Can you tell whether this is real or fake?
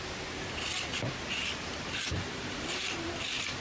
real